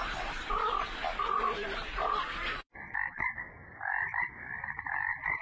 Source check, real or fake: real